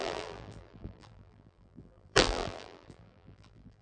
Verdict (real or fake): fake